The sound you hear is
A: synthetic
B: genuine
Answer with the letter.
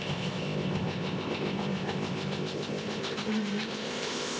A